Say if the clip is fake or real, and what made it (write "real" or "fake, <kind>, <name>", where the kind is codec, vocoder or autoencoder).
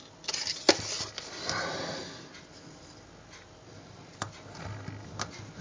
real